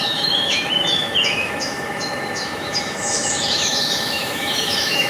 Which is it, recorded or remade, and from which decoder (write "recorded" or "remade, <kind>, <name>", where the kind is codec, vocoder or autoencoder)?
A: remade, autoencoder, DAC-VAE